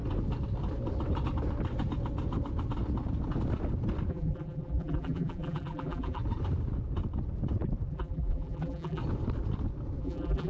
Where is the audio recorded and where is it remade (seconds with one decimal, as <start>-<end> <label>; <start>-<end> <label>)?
0.0-4.1 recorded; 4.1-6.2 remade; 6.2-7.9 recorded; 7.9-9.0 remade; 9.0-10.0 recorded; 10.0-10.5 remade